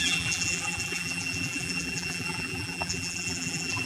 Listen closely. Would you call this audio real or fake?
fake